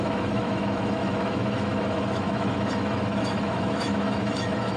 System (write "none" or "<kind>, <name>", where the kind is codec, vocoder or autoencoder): autoencoder, DAC-VAE